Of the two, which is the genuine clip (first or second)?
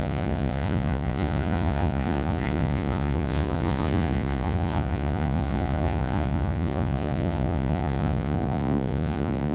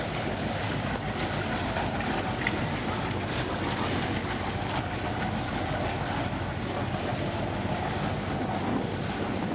second